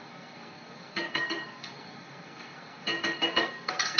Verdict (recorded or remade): remade